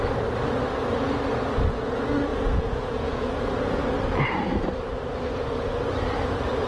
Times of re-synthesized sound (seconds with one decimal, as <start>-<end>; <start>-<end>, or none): 2.3-3.3